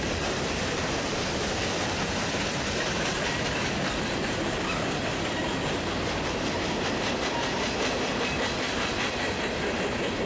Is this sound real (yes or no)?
no